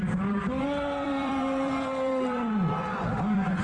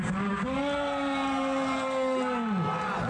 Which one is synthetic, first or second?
first